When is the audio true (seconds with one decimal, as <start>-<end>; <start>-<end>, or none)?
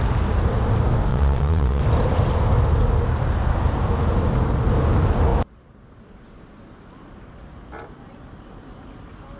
0.0-1.1; 1.8-9.4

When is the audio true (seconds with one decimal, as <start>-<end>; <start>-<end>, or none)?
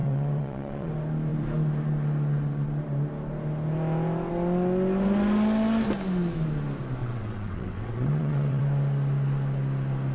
0.9-7.0; 8.6-10.1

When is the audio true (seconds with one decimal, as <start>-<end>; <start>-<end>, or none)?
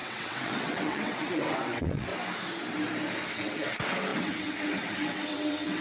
2.1-3.3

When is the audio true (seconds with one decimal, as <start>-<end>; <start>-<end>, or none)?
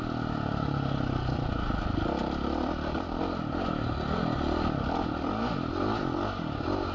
0.0-6.9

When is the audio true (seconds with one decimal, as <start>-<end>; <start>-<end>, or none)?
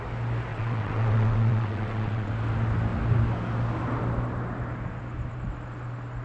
0.0-0.5; 2.3-6.2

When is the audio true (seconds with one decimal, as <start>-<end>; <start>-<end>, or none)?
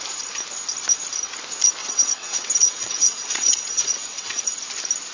0.0-1.8; 4.4-5.1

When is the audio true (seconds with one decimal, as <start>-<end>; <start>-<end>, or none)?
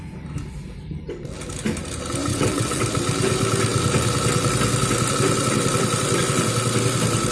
0.0-2.3; 2.8-7.3